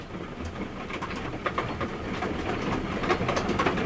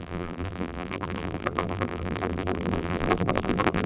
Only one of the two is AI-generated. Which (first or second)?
second